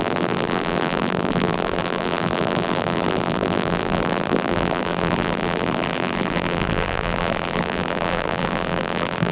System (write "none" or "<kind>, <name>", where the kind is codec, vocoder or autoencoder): vocoder, BigVGAN v2